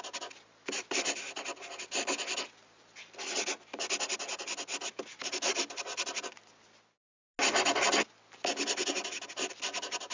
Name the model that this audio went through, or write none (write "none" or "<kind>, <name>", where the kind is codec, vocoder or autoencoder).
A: none